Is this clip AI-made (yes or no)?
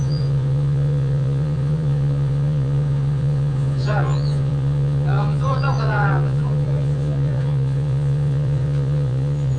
yes